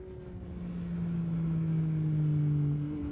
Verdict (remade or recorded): recorded